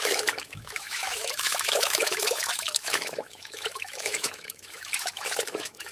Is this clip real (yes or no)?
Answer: no